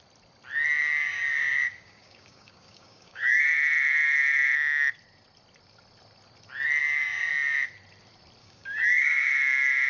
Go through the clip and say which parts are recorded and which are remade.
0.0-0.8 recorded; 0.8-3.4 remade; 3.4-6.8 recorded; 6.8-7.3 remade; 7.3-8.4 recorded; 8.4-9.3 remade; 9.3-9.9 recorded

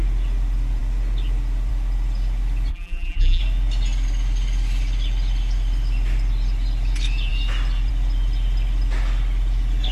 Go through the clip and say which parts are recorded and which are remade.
0.0-2.7 recorded; 2.7-3.4 remade; 3.4-9.9 recorded

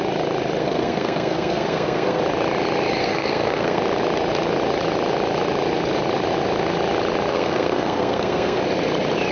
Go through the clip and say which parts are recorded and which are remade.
0.0-0.6 recorded; 0.6-2.2 remade; 2.2-3.0 recorded; 3.0-3.8 remade; 3.8-7.3 recorded; 7.3-8.6 remade; 8.6-9.3 recorded

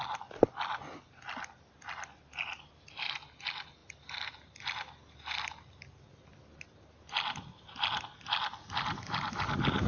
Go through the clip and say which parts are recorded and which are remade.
0.0-9.9 recorded

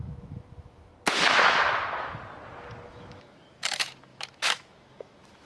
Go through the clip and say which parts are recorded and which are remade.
0.0-0.9 remade; 0.9-2.9 recorded; 2.9-5.5 remade